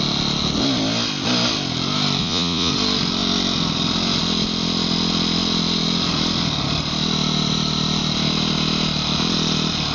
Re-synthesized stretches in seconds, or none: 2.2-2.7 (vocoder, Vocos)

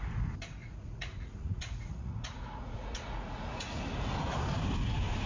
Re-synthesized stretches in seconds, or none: 0.6-3.8 (vocoder, Vocos)

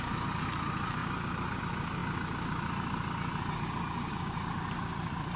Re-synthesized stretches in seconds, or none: 0.0-2.0 (vocoder, BigVGAN v2); 4.1-5.4